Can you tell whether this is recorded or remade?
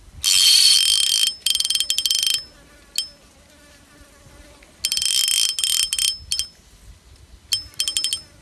recorded